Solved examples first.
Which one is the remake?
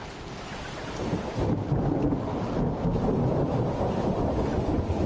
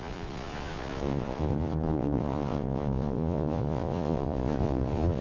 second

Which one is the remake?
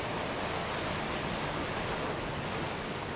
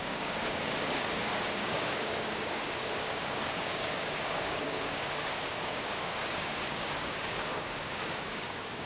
second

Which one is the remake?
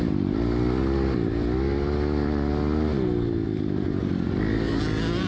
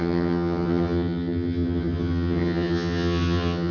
second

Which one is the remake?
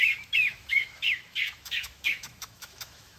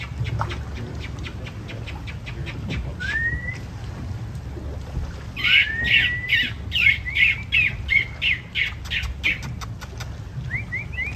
first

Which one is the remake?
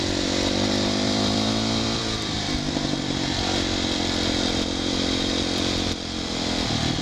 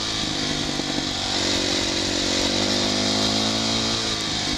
first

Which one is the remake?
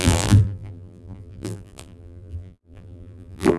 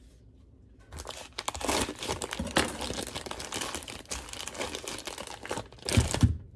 first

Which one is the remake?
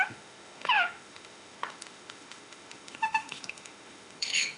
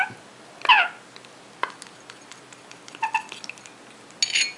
first